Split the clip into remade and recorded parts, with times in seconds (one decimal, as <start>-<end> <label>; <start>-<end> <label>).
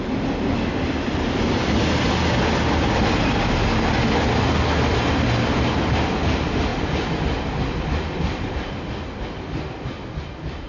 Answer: 0.0-10.7 recorded